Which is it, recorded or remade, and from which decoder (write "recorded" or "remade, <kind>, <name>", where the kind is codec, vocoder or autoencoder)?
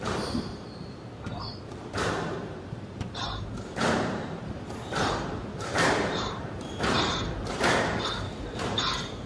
remade, vocoder, BigVGAN v2